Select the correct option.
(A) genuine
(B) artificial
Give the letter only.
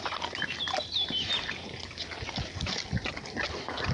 A